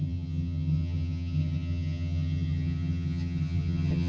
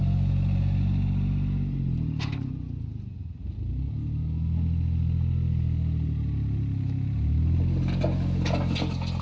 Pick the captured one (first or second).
second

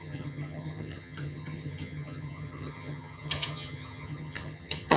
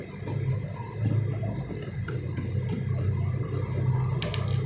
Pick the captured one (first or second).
second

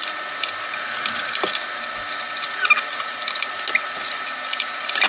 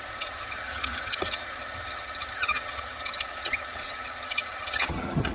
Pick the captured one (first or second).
first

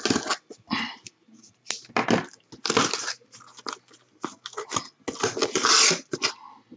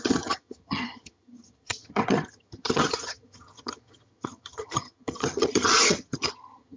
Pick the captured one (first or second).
first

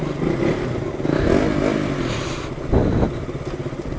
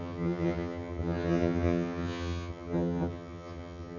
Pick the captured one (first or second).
first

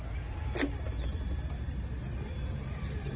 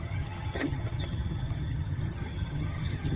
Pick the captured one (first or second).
first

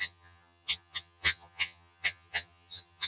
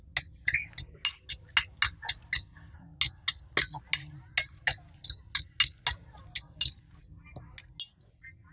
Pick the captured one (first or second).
second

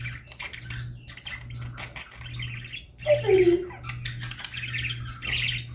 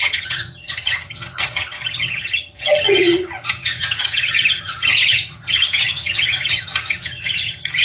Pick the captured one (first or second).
first